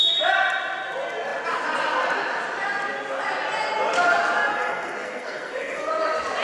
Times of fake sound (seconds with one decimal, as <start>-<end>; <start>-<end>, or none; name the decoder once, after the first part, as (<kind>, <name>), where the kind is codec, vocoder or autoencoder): 4.5-5.9 (codec, SNAC)